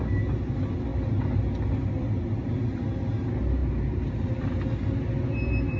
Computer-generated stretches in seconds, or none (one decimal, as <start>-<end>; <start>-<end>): 3.6-4.3